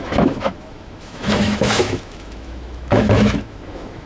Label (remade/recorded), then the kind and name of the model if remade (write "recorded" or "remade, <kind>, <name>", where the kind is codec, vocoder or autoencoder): remade, autoencoder, DAC-VAE